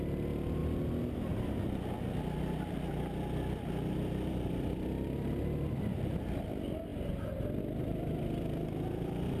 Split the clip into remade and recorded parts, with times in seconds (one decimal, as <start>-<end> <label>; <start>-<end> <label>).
0.0-0.6 remade; 0.6-4.3 recorded; 4.3-6.9 remade; 6.9-7.6 recorded; 7.6-9.4 remade